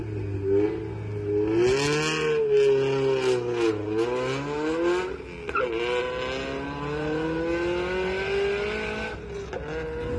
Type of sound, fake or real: real